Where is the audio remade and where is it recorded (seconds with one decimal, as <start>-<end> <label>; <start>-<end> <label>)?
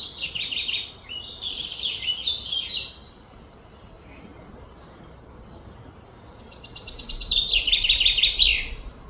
0.0-9.1 recorded